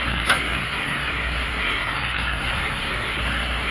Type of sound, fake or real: fake